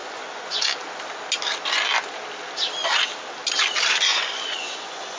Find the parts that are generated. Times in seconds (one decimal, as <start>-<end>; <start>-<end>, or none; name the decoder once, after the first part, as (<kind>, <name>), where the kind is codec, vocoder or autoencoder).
0.0-0.6 (vocoder, Vocos); 4.1-5.2